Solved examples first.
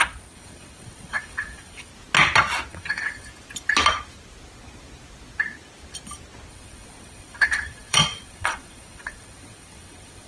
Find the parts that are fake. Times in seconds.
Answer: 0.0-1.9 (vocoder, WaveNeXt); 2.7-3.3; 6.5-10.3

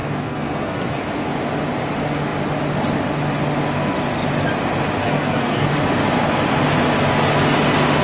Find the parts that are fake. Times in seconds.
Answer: 0.0-1.0 (codec, SNAC); 5.0-5.7